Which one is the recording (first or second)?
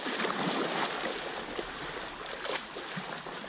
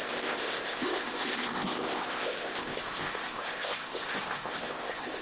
first